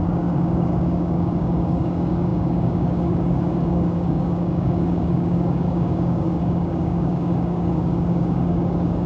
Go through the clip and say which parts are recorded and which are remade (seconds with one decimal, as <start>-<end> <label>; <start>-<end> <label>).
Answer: 0.0-9.1 remade